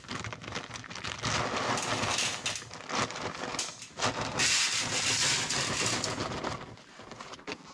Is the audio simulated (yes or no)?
no